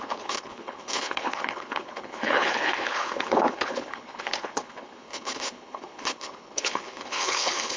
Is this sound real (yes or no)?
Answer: no